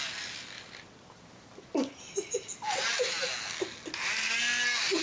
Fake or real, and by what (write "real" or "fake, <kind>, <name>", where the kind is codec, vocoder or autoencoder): real